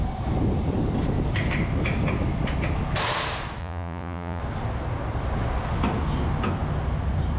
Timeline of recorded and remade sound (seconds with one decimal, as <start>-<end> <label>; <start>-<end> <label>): 0.0-3.6 recorded; 3.6-4.4 remade; 4.4-7.4 recorded